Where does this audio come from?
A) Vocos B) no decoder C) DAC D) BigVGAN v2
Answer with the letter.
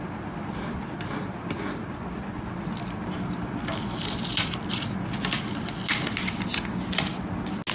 B